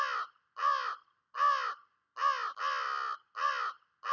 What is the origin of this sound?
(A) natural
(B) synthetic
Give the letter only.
A